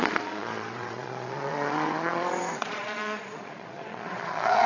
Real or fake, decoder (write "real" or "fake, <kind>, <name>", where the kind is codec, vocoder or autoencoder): fake, vocoder, Vocos